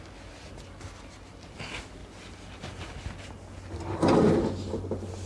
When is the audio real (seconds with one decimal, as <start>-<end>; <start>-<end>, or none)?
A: 0.0-5.3